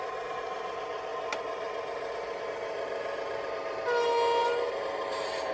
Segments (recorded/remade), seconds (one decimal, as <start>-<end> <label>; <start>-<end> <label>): 0.0-5.5 recorded